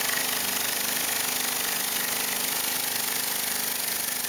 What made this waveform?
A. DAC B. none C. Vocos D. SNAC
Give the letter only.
B